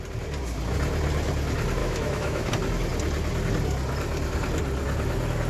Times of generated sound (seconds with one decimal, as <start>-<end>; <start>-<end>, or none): 1.8-2.5